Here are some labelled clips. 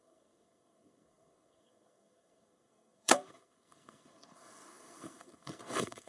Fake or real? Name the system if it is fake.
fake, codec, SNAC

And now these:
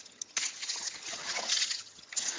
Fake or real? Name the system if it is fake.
fake, vocoder, HiFi-GAN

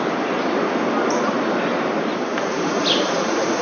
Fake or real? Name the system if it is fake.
real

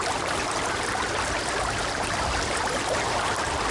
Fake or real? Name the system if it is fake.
real